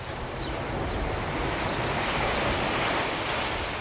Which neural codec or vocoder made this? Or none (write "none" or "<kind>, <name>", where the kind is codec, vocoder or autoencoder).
none